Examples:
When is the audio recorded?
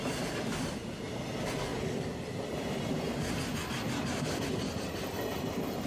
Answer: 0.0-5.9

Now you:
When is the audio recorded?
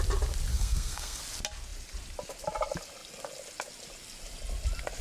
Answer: 0.0-0.5; 1.2-5.0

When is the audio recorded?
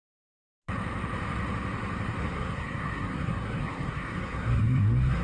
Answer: 0.0-2.2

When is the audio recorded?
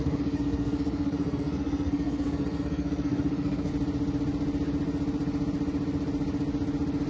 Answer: 3.7-7.1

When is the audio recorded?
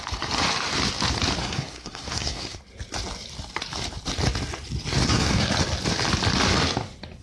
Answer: 0.0-1.4; 2.6-5.0; 5.5-7.2